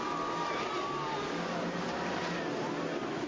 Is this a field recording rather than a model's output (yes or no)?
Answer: yes